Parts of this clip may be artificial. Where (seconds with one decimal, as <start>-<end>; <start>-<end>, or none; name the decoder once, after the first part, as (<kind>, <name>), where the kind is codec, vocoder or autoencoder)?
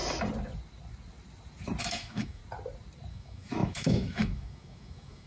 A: 1.8-2.4 (autoencoder, DAC-VAE); 3.1-5.3